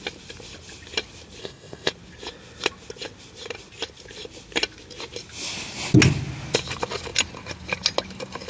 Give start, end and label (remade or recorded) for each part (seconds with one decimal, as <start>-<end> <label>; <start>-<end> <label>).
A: 0.0-1.4 recorded; 1.4-1.9 remade; 1.9-8.5 recorded